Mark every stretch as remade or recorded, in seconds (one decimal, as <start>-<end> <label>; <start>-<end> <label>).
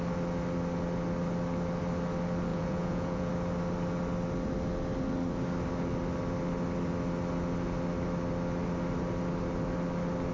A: 0.0-2.5 recorded; 2.5-3.3 remade; 3.3-10.3 recorded